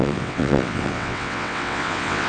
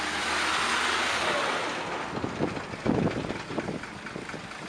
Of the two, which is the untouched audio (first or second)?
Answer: second